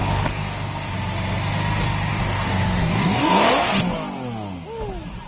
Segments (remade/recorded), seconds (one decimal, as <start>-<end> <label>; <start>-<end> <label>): 0.0-0.9 remade; 0.9-2.1 recorded; 2.1-3.8 remade; 3.8-5.3 recorded